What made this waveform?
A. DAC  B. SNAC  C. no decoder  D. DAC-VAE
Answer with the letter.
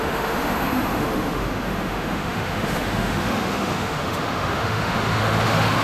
D